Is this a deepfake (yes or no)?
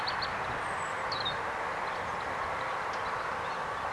no